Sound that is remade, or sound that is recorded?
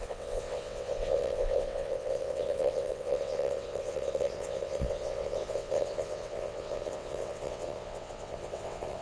remade